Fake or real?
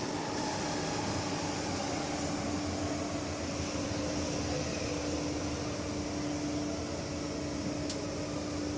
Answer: real